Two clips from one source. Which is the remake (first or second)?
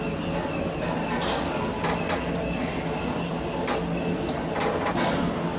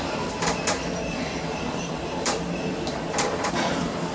second